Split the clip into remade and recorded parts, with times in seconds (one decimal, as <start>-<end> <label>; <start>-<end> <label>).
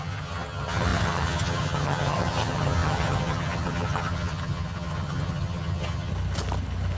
0.0-6.1 remade; 6.1-7.0 recorded